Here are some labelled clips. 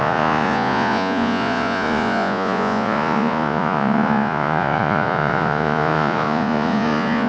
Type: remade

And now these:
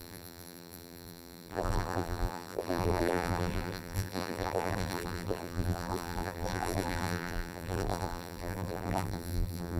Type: remade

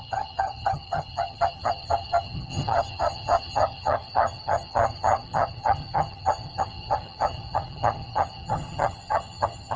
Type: remade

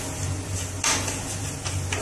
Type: recorded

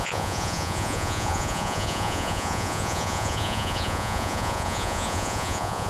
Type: remade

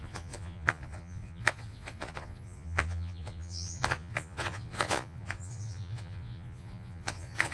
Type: remade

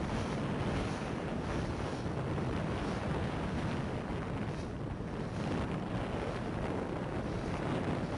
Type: recorded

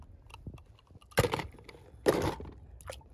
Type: recorded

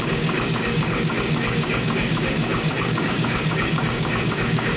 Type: remade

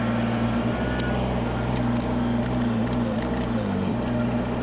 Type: recorded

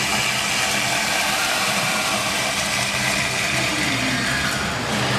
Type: remade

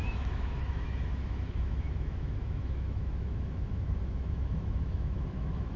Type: remade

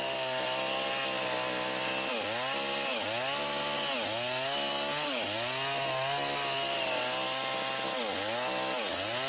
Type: recorded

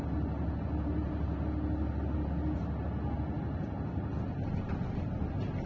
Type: recorded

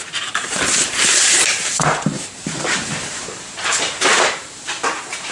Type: remade